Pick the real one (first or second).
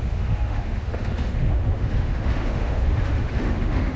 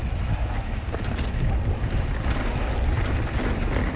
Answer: second